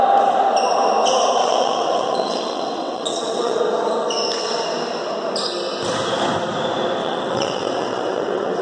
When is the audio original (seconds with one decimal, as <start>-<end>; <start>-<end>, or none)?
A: 0.0-1.4; 3.6-7.0